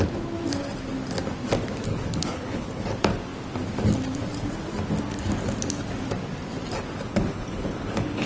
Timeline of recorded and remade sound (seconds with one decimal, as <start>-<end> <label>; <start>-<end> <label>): 0.0-1.9 recorded; 1.9-2.8 remade; 2.8-7.1 recorded; 7.1-8.3 remade